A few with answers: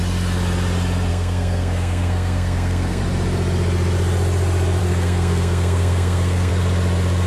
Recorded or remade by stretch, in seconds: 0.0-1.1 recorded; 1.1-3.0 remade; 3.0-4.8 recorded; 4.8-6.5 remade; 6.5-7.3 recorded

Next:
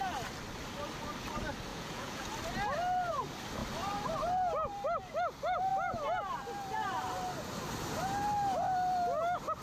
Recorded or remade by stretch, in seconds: 0.0-1.7 recorded; 1.7-2.3 remade; 2.3-9.6 recorded

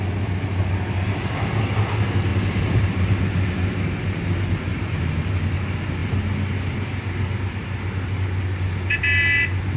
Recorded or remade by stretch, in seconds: 0.0-2.3 recorded; 2.3-4.2 remade; 4.2-4.7 recorded; 4.7-5.3 remade; 5.3-9.8 recorded